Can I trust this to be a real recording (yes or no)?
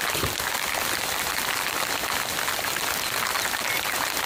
yes